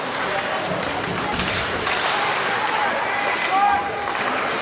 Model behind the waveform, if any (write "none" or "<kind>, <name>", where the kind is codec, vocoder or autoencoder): none